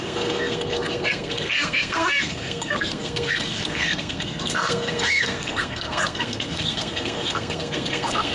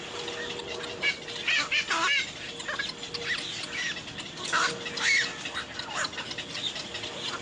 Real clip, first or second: second